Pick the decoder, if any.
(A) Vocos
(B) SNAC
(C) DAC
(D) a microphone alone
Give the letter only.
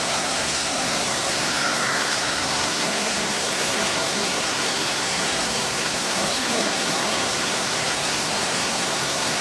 B